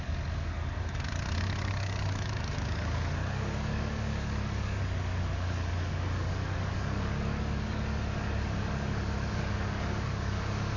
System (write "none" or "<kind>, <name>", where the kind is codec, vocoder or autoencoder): codec, DAC